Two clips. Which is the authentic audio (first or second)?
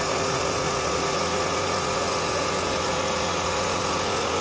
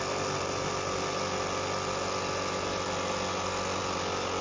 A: second